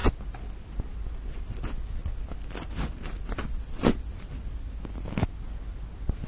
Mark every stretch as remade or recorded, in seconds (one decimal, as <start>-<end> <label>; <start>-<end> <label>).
0.0-6.3 recorded